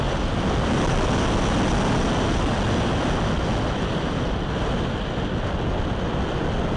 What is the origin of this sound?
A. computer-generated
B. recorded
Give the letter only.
B